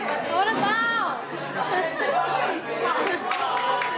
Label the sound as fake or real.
real